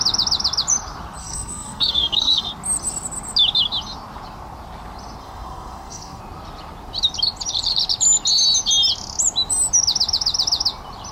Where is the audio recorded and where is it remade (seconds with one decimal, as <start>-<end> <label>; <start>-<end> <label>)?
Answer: 0.0-1.2 recorded; 1.2-2.5 remade; 2.5-5.2 recorded; 5.2-6.2 remade; 6.2-11.1 recorded

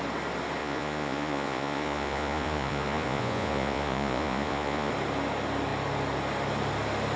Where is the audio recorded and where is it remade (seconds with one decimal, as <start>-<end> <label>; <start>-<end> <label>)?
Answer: 0.0-0.6 recorded; 0.6-4.9 remade; 4.9-7.2 recorded

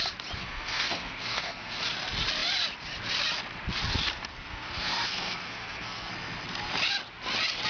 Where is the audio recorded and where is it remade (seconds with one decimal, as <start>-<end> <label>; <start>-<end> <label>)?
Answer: 0.0-0.4 recorded; 0.4-1.8 remade; 1.8-4.3 recorded; 4.3-6.1 remade; 6.1-7.7 recorded

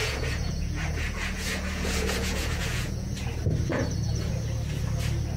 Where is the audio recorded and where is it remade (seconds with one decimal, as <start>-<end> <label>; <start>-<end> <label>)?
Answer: 0.0-3.1 remade; 3.1-3.7 recorded; 3.7-4.3 remade; 4.3-5.4 recorded